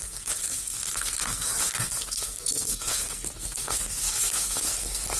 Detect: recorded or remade remade